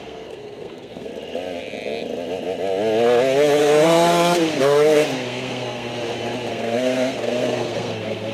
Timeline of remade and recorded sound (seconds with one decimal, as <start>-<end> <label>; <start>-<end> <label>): 0.0-1.1 remade; 1.1-3.6 recorded; 3.6-5.9 remade; 5.9-6.5 recorded; 6.5-8.3 remade